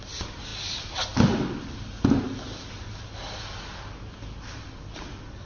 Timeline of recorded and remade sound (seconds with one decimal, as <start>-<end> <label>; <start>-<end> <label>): 0.0-5.5 recorded